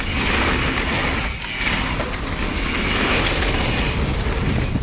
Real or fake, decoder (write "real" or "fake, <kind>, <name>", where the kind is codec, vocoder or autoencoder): real